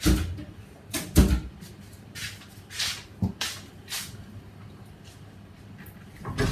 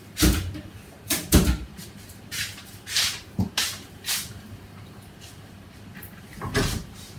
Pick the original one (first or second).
first